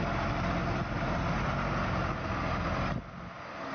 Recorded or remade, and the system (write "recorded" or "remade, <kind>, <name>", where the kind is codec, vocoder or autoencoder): recorded